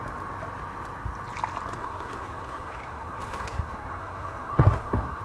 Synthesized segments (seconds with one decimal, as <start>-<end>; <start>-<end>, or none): 1.8-5.2